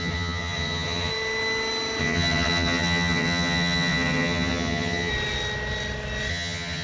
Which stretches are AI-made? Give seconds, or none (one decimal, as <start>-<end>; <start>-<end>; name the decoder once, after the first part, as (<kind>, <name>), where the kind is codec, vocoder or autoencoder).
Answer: 0.0-1.1 (vocoder, HiFi-GAN); 2.0-5.1; 6.3-6.8